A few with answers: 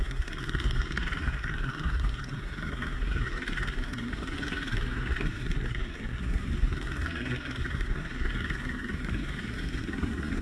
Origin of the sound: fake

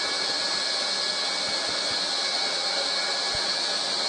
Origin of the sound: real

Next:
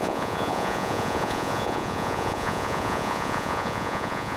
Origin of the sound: fake